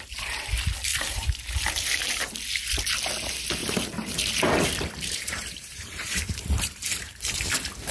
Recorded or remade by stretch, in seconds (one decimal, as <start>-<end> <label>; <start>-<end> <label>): 0.0-0.9 recorded; 0.9-2.3 remade; 2.3-3.6 recorded; 3.6-7.4 remade; 7.4-7.9 recorded